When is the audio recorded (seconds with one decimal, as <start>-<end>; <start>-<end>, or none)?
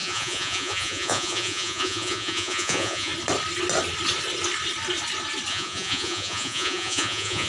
3.1-5.5